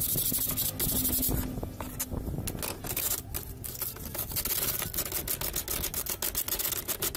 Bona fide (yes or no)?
yes